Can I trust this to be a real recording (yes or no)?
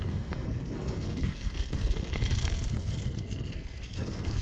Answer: no